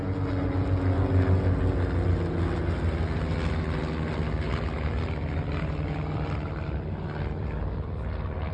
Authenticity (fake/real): real